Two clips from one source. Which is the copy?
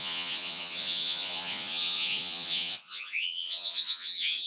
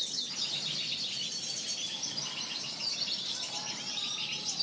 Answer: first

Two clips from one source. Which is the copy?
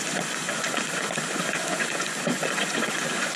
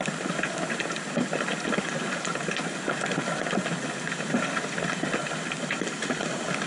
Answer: first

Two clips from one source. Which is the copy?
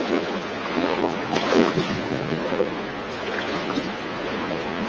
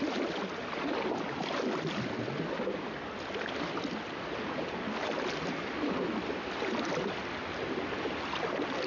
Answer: first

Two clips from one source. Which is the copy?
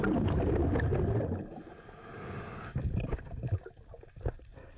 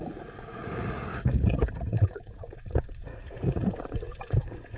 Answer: second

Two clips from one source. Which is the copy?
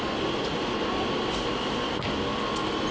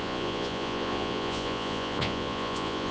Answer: second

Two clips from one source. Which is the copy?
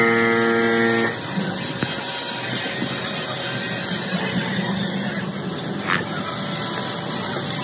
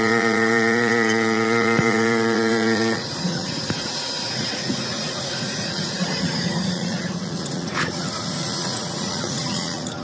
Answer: second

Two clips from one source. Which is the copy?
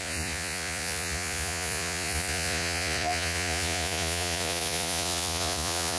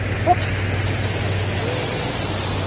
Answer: first